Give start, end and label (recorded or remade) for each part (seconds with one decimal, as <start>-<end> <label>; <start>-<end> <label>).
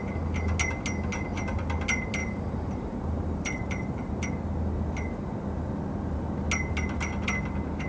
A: 0.0-2.2 recorded; 2.2-4.3 remade; 4.3-7.9 recorded